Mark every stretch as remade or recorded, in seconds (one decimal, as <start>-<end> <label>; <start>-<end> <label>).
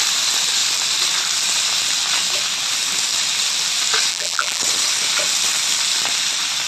0.0-4.1 recorded; 4.1-4.6 remade; 4.6-6.7 recorded